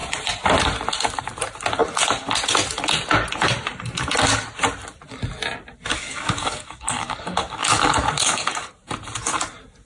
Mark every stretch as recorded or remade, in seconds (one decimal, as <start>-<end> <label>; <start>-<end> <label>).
0.0-5.9 recorded; 5.9-8.7 remade; 8.7-9.9 recorded